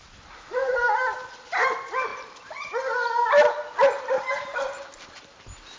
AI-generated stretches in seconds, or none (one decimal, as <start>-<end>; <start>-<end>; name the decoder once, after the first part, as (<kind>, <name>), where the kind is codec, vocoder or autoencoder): none